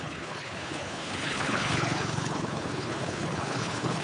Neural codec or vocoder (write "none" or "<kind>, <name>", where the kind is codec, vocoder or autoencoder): codec, HILCodec